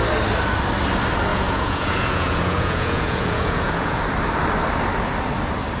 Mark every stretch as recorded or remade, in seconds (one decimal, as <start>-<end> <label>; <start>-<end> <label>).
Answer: 0.0-1.3 recorded; 1.3-4.0 remade; 4.0-5.8 recorded